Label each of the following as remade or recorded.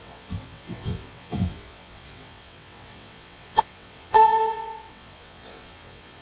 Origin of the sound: remade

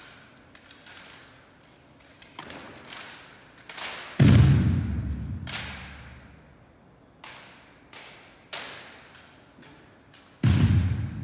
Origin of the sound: recorded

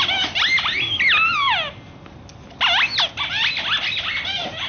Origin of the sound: recorded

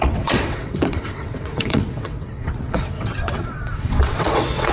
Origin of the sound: remade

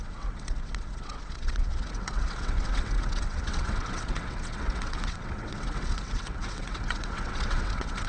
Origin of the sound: remade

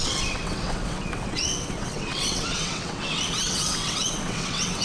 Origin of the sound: remade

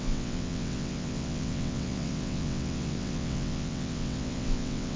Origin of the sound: remade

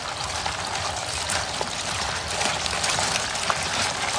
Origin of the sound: recorded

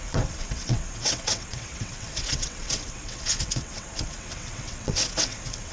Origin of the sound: remade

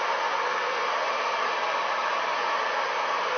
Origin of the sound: recorded